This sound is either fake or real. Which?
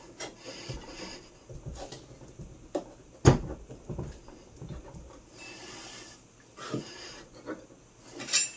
real